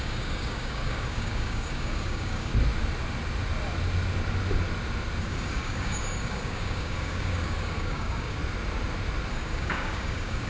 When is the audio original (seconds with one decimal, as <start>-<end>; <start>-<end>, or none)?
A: 2.5-5.2; 8.4-9.3